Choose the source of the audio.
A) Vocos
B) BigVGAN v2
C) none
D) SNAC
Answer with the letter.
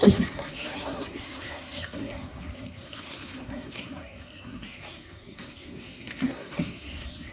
D